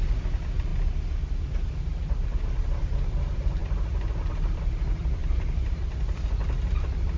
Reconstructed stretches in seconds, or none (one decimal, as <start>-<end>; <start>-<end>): none